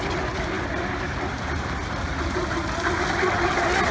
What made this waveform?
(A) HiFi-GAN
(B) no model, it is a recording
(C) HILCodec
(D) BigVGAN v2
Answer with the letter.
B